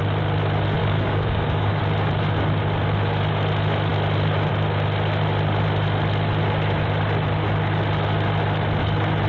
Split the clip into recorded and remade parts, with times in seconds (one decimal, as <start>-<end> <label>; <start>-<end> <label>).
0.0-0.8 recorded; 0.8-1.8 remade; 1.8-9.3 recorded